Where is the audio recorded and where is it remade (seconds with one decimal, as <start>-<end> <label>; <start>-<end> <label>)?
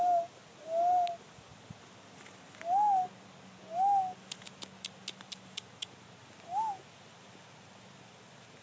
0.0-8.6 recorded